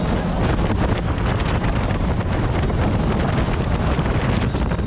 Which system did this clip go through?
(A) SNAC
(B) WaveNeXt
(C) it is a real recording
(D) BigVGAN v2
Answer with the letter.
C